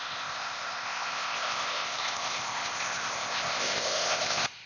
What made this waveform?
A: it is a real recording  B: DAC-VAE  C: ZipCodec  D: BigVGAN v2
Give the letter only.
C